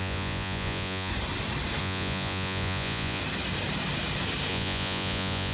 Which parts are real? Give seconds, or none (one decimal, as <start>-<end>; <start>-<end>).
1.1-1.8; 3.2-4.5